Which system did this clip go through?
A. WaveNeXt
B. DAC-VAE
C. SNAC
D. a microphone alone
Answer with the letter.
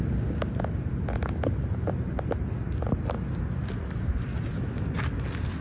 D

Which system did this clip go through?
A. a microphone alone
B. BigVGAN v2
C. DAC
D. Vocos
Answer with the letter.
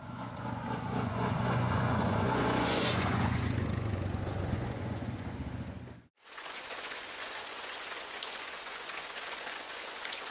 D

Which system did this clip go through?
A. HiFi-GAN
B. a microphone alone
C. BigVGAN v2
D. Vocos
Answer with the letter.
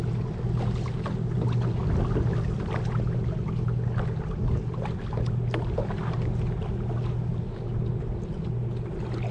B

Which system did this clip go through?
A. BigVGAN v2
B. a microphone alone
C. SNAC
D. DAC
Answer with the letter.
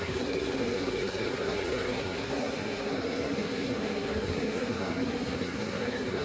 C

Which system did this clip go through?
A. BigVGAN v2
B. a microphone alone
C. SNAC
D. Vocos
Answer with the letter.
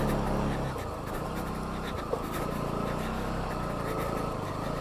B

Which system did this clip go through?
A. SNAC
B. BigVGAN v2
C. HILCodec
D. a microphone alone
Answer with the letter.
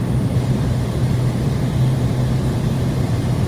B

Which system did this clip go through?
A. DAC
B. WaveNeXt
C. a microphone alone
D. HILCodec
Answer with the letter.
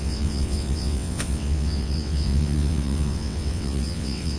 B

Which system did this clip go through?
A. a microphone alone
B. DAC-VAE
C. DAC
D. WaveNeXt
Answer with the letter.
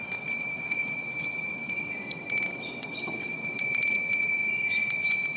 D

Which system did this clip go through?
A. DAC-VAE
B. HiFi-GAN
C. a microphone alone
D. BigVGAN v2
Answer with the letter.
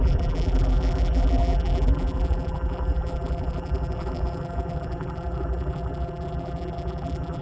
D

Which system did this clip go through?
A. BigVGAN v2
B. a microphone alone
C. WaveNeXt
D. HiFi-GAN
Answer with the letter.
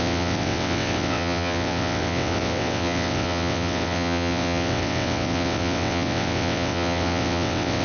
C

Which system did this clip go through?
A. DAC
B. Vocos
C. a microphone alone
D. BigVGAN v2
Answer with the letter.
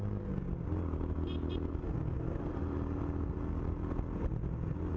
C